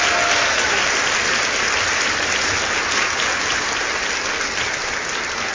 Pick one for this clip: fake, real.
real